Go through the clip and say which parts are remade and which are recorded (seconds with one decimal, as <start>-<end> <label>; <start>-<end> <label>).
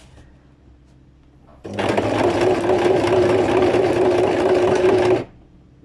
0.0-5.8 recorded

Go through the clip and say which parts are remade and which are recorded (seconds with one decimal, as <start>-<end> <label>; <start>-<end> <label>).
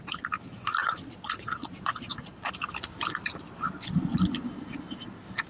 0.0-0.8 recorded; 0.8-2.5 remade; 2.5-5.5 recorded